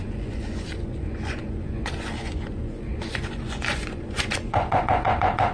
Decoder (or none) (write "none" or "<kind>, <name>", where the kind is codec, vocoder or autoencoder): vocoder, Vocos